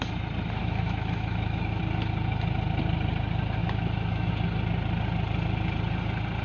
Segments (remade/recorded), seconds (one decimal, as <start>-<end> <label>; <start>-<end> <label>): 0.0-0.6 recorded; 0.6-1.8 remade; 1.8-3.6 recorded; 3.6-4.3 remade; 4.3-6.4 recorded

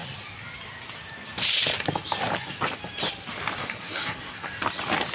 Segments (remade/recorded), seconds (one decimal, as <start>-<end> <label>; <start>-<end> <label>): 0.0-3.6 recorded; 3.6-4.5 remade; 4.5-5.1 recorded

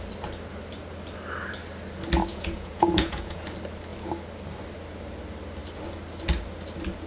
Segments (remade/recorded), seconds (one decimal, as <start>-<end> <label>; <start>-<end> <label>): 0.0-2.3 recorded; 2.3-3.4 remade; 3.4-7.1 recorded

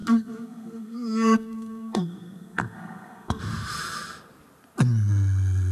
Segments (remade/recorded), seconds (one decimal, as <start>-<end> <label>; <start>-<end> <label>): 0.0-3.4 remade; 3.4-5.7 recorded

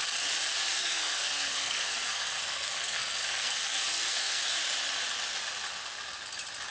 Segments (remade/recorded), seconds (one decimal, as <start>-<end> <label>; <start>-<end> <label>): 0.0-0.7 recorded; 0.7-4.4 remade; 4.4-6.7 recorded

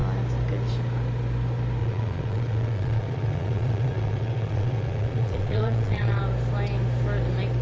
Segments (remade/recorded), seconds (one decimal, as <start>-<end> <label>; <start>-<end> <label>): 0.0-1.8 recorded; 1.8-6.2 remade; 6.2-7.6 recorded

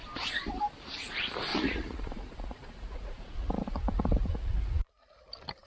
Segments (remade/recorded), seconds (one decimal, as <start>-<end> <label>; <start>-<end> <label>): 0.0-1.5 recorded; 1.5-4.9 remade; 4.9-5.7 recorded